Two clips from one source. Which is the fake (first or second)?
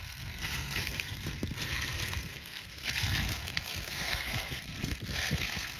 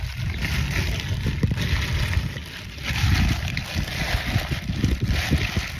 first